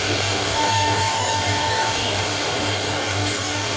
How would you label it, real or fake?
fake